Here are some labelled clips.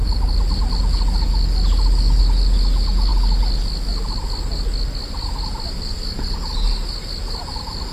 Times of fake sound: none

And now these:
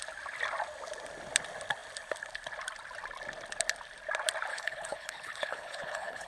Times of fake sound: 4.5-6.3 (codec, HILCodec)

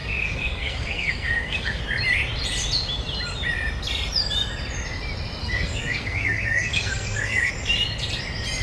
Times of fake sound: 0.0-1.8 (codec, SNAC); 5.4-7.5

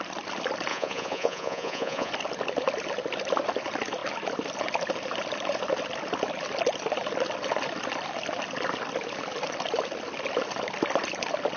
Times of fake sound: 0.7-2.1 (vocoder, Vocos)

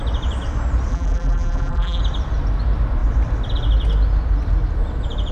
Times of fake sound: 0.9-2.0 (vocoder, BigVGAN v2)

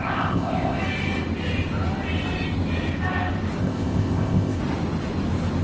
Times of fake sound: 0.0-0.8 (codec, ZipCodec); 3.6-4.6

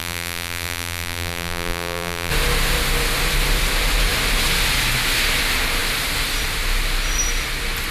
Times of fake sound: 0.0-2.3 (vocoder, BigVGAN v2)

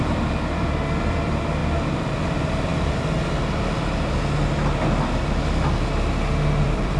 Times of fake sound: 0.0-1.6 (vocoder, BigVGAN v2); 2.2-2.7; 6.6-7.0